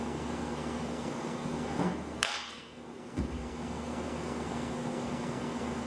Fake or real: fake